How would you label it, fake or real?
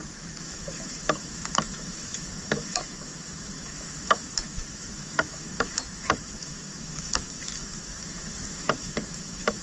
fake